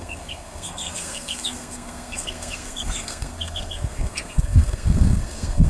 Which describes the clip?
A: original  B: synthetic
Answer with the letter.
B